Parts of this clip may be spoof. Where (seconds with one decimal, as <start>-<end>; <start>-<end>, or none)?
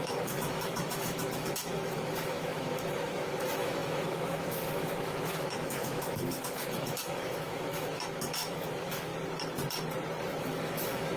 0.0-9.1; 10.4-11.2